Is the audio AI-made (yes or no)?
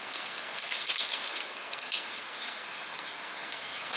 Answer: yes